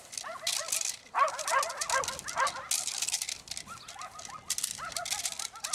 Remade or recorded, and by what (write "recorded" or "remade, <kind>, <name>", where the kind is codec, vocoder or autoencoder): recorded